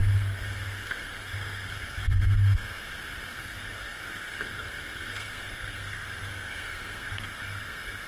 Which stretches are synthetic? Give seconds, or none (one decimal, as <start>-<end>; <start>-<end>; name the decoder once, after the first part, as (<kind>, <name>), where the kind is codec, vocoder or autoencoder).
0.0-2.8 (codec, SNAC); 3.3-8.1